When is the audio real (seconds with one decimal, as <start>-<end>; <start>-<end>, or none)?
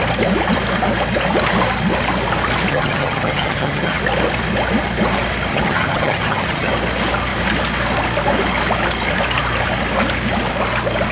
0.0-2.7; 4.0-5.5; 6.7-11.1